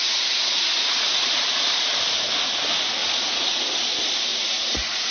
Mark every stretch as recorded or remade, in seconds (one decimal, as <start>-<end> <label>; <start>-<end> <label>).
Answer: 0.0-1.4 remade; 1.4-3.0 recorded; 3.0-3.6 remade; 3.6-4.3 recorded; 4.3-5.1 remade